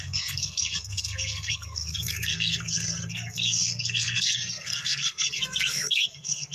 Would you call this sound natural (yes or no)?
no